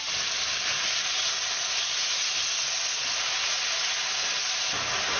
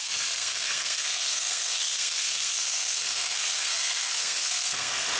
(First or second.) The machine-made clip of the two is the second